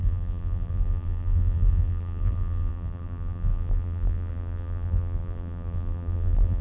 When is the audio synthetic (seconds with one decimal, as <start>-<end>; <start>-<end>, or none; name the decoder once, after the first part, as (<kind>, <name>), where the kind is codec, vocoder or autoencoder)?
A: 0.0-6.6 (vocoder, BigVGAN v2)